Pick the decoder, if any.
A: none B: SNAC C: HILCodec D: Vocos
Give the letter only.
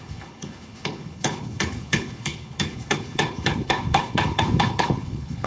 C